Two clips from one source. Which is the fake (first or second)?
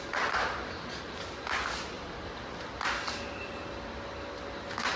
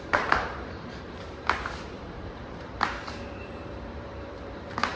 second